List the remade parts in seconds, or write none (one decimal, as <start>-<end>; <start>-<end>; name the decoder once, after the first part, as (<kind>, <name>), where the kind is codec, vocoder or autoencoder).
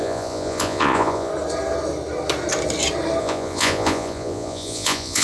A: 0.0-1.3 (vocoder, Vocos); 3.2-5.2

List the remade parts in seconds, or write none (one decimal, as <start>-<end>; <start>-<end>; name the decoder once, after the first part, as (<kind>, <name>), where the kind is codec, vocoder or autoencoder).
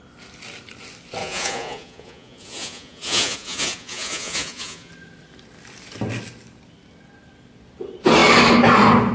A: 1.2-4.9 (vocoder, Vocos)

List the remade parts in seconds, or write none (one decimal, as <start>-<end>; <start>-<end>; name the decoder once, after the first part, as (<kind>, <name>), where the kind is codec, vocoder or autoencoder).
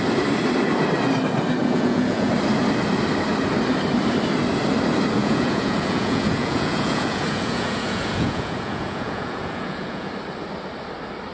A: 1.6-2.3 (vocoder, Vocos); 5.2-10.1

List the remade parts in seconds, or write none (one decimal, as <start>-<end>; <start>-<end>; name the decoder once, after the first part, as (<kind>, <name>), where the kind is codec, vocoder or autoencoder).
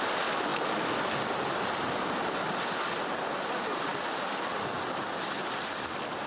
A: none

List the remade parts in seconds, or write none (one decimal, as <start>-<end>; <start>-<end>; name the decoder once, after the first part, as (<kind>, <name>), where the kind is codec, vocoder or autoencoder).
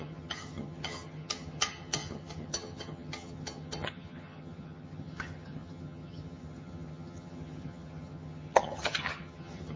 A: 0.0-9.8 (vocoder, HiFi-GAN)